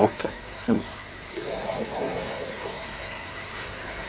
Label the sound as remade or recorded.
remade